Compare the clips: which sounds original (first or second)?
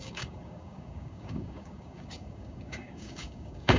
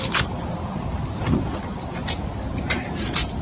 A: second